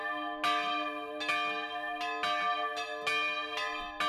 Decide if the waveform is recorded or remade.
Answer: recorded